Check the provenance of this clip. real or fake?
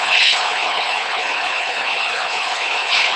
fake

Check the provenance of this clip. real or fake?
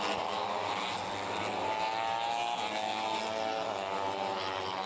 real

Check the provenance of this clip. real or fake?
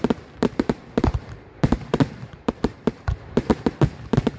fake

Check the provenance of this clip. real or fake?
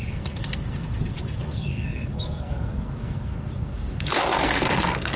fake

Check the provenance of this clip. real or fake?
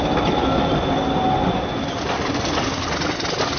real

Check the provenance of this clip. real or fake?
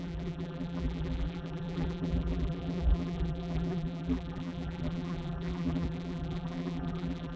fake